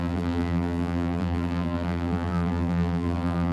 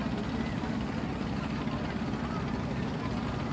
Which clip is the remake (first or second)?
first